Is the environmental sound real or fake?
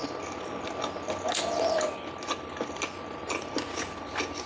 real